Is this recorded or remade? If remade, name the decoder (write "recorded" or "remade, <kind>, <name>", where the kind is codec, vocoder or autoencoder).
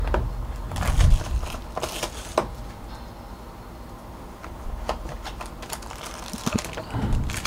recorded